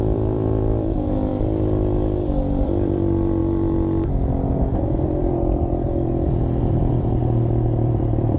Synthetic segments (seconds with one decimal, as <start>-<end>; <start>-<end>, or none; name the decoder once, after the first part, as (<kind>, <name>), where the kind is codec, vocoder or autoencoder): 0.0-1.3 (vocoder, BigVGAN v2); 2.5-3.4; 4.7-8.4